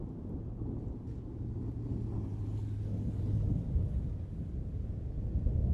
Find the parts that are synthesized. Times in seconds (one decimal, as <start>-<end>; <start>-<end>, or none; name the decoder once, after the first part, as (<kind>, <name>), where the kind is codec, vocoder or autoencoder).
none